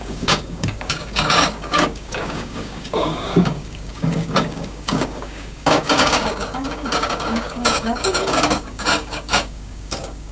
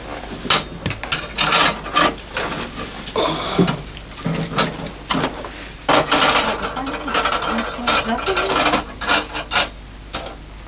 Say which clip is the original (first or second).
second